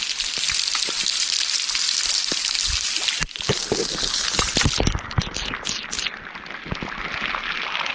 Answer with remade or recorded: recorded